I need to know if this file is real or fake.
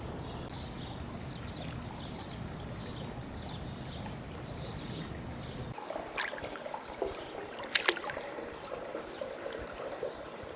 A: real